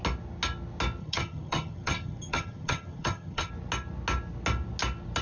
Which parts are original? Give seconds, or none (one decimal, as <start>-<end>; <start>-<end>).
0.0-1.0; 3.5-5.2